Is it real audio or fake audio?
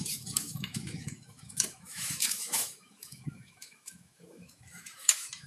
fake